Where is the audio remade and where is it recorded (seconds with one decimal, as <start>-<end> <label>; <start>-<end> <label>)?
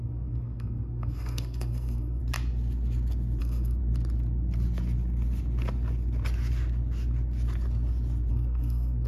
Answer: 0.0-2.2 remade; 2.2-3.4 recorded; 3.4-3.8 remade; 3.8-8.3 recorded; 8.3-9.1 remade